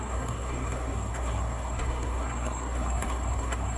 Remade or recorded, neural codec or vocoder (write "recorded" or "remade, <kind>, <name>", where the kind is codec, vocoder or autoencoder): remade, codec, SNAC